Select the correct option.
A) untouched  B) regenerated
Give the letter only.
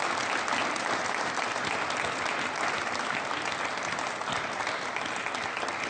A